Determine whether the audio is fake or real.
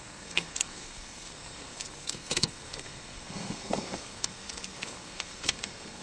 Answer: fake